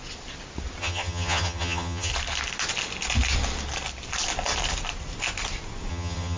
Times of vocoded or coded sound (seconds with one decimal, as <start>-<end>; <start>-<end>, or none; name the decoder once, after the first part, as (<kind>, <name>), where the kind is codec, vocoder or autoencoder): 0.8-2.1 (vocoder, HiFi-GAN); 5.9-6.4